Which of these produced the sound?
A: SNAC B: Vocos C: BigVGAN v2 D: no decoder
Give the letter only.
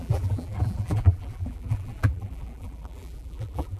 C